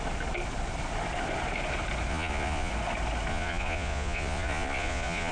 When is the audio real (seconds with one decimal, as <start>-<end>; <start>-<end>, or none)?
0.0-2.1; 2.7-3.3